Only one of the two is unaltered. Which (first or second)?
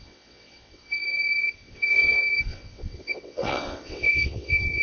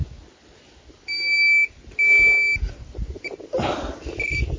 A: second